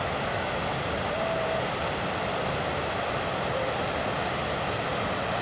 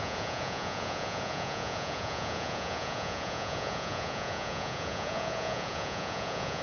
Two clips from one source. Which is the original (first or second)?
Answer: first